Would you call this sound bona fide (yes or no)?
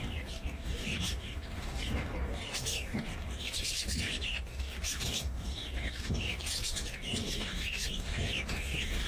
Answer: no